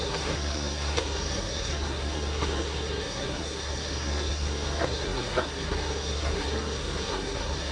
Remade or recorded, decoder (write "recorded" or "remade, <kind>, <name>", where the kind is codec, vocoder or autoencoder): remade, codec, SNAC